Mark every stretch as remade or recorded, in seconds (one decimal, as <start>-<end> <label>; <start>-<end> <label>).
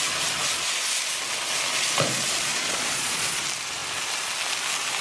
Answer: 0.0-2.5 recorded; 2.5-3.4 remade; 3.4-5.0 recorded